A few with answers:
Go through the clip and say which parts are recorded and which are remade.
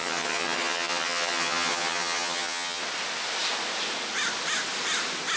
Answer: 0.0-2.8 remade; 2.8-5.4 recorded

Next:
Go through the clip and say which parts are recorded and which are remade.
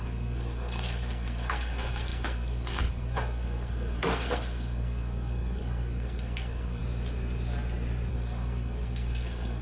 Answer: 0.0-6.8 remade; 6.8-8.1 recorded; 8.1-9.6 remade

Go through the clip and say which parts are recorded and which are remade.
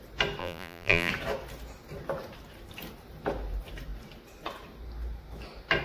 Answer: 0.0-0.4 recorded; 0.4-1.1 remade; 1.1-5.8 recorded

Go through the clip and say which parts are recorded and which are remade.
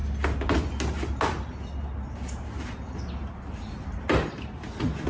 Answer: 0.0-5.1 recorded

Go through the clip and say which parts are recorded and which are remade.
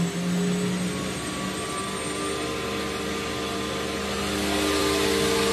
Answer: 0.0-5.5 recorded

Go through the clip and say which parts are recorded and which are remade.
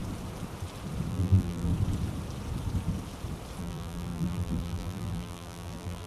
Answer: 0.0-1.1 recorded; 1.1-1.7 remade; 1.7-3.6 recorded; 3.6-6.1 remade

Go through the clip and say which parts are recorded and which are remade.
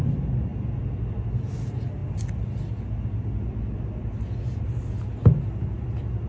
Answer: 0.0-6.3 recorded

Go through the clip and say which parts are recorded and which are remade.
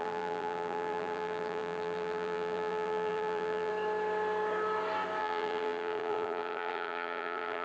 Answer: 0.0-3.7 remade; 3.7-5.2 recorded; 5.2-7.6 remade